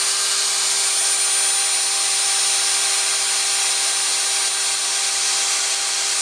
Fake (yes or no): no